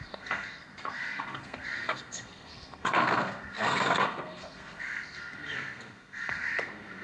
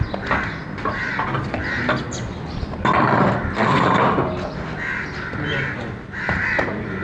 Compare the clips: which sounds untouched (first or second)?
second